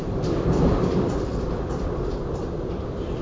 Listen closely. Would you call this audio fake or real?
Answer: fake